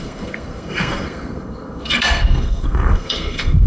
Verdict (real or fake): fake